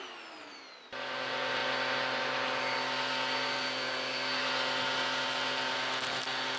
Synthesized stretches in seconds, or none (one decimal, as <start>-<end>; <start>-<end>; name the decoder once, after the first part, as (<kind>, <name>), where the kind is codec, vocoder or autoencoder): none